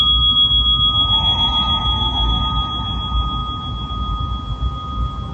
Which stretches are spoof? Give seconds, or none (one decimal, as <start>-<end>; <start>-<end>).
1.8-2.4